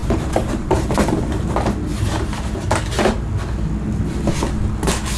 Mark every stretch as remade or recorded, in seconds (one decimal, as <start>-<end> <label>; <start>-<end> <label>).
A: 0.0-1.2 remade; 1.2-1.9 recorded; 1.9-3.3 remade; 3.3-5.2 recorded